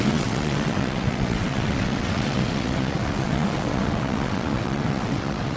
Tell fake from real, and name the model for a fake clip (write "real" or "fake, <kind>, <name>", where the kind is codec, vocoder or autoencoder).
fake, vocoder, WaveNeXt